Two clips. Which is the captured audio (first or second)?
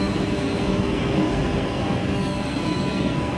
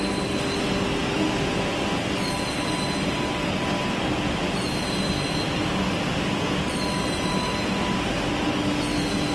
second